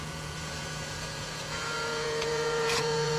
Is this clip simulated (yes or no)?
yes